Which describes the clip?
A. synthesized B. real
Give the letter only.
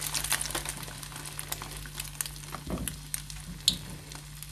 B